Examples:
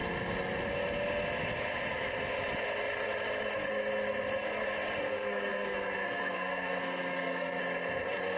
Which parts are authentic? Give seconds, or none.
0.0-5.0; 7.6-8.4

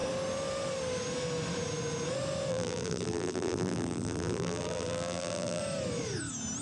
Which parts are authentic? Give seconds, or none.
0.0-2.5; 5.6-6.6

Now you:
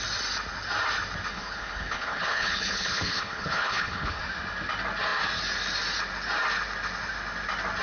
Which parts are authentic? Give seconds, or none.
0.0-1.3; 4.2-7.8

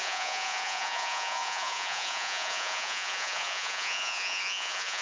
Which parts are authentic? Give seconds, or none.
none

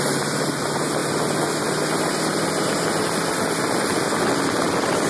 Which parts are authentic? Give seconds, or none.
0.0-5.1

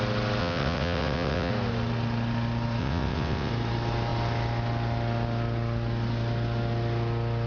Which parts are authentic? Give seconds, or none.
0.0-0.4; 1.5-2.8; 3.5-7.5